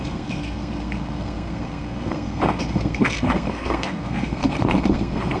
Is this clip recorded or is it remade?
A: remade